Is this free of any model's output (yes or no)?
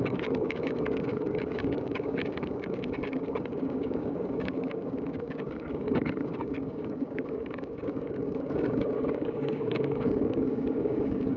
no